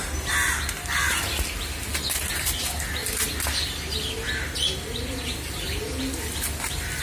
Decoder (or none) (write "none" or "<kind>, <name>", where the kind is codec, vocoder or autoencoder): none